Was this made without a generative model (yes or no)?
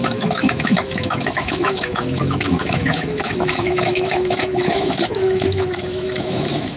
no